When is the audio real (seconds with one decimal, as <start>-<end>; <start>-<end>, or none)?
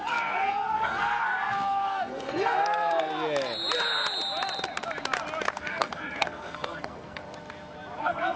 3.1-5.6; 7.2-8.0